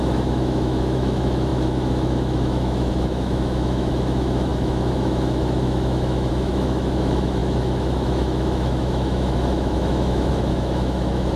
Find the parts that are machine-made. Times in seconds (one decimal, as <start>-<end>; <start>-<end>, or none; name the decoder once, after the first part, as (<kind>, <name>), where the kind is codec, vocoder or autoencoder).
0.0-11.4 (autoencoder, DAC-VAE)